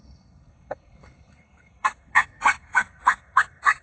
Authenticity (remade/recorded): remade